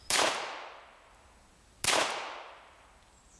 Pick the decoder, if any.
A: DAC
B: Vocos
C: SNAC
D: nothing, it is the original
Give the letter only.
D